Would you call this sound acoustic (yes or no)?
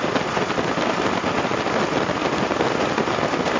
yes